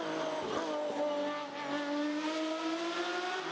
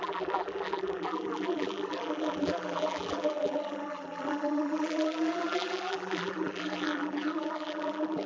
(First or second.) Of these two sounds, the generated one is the second